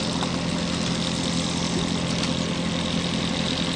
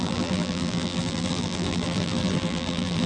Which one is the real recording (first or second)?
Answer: first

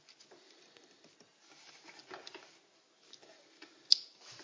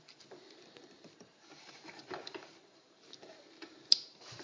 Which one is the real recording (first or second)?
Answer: first